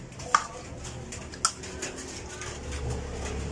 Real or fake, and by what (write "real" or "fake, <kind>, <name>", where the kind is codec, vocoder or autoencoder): real